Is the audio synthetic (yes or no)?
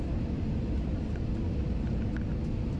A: no